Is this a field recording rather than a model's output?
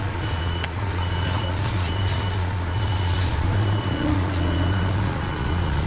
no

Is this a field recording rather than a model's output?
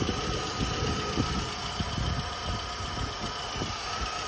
yes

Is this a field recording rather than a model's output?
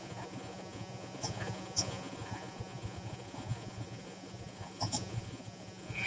no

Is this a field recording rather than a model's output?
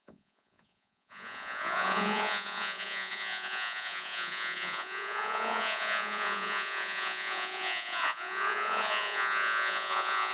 no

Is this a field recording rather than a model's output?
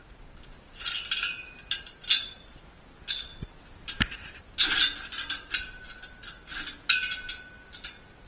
yes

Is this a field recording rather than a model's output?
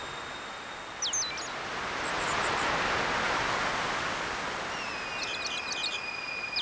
yes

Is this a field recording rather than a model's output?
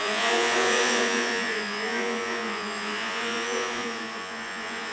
no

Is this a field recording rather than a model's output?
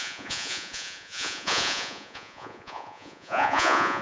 no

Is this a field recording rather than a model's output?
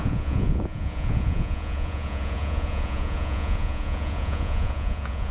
no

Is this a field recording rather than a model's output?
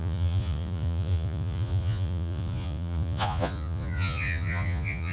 no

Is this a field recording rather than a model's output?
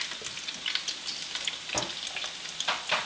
yes